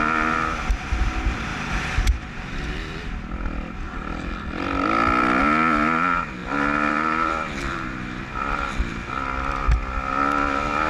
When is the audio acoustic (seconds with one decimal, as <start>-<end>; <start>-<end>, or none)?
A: 0.0-1.5; 5.4-6.4; 9.1-10.9